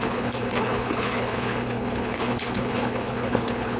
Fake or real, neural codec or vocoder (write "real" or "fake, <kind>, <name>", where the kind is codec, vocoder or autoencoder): fake, codec, HILCodec